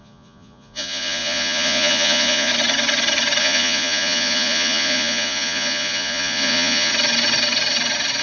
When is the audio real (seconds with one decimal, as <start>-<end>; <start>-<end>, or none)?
2.5-3.4; 6.9-8.2